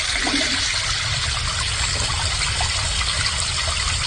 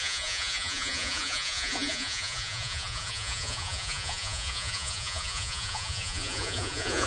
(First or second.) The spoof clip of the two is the second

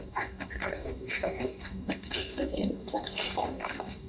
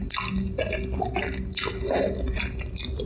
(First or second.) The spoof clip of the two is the first